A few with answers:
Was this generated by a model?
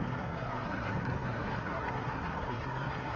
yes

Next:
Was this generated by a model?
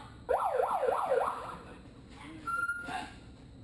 no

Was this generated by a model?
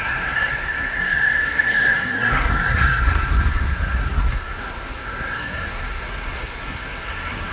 yes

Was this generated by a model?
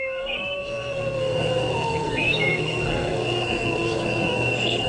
yes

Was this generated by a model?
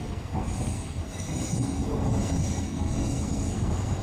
yes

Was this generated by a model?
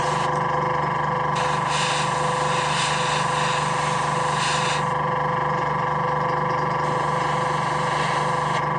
no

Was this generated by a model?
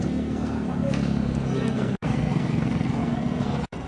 yes